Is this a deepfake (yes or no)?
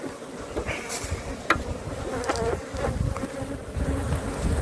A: no